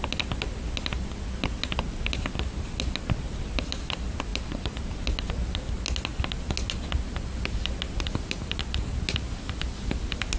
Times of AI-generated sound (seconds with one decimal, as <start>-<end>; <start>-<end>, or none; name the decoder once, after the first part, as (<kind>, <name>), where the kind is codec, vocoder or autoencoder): 4.3-5.0 (vocoder, BigVGAN v2)